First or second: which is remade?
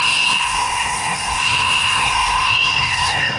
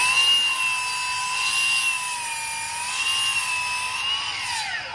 first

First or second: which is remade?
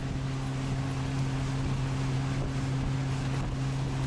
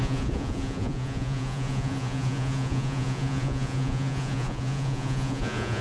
second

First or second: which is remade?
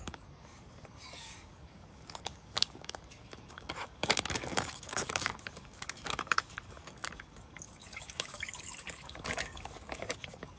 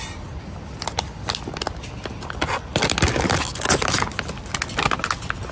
first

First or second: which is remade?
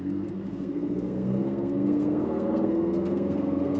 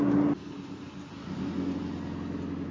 first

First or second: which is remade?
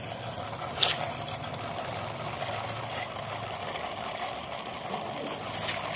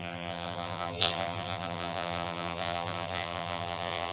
second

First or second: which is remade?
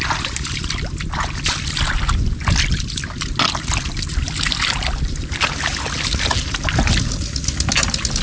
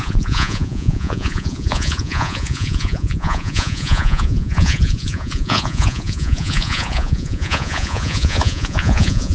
second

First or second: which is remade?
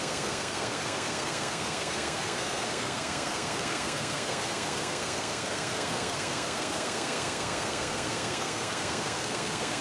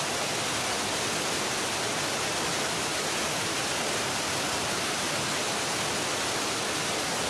first